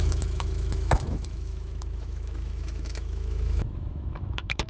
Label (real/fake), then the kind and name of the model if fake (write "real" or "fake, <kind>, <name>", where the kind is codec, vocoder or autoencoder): fake, autoencoder, DAC-VAE